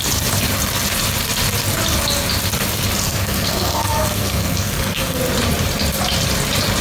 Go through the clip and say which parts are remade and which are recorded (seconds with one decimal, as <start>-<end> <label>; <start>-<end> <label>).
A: 0.0-3.0 recorded; 3.0-5.2 remade; 5.2-6.8 recorded